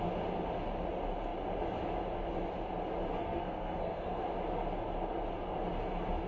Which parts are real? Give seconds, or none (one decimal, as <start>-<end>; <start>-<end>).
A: 0.0-3.2; 4.2-6.3